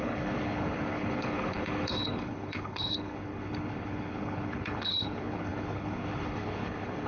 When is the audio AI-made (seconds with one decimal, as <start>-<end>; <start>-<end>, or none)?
0.0-7.1